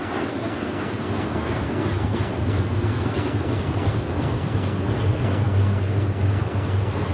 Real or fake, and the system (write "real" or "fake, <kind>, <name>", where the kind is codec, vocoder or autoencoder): fake, codec, SNAC